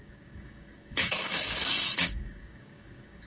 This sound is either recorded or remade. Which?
remade